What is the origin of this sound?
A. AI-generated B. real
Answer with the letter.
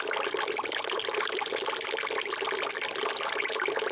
B